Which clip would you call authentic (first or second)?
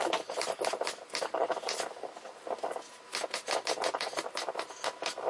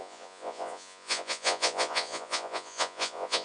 first